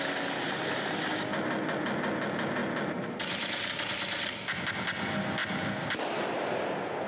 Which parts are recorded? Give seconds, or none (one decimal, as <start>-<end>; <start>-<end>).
0.0-7.1